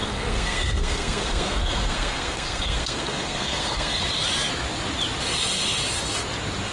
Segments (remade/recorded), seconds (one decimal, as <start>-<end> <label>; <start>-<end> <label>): 0.0-4.0 remade; 4.0-6.7 recorded